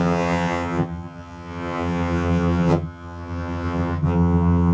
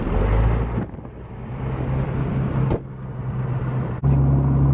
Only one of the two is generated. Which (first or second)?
first